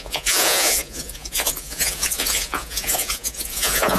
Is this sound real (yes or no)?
no